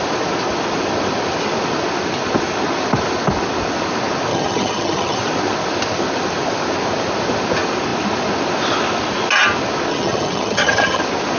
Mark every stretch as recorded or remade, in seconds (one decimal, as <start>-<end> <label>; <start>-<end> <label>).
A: 0.0-4.3 recorded; 4.3-5.2 remade; 5.2-9.9 recorded; 9.9-11.0 remade; 11.0-11.4 recorded